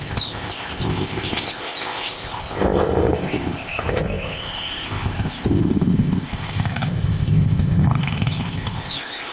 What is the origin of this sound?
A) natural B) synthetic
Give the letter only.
B